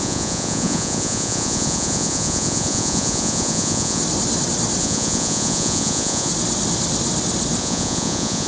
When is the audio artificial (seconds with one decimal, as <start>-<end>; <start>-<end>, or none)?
0.0-4.0; 4.8-6.3; 7.6-8.5